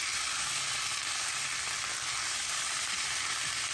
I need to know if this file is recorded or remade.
recorded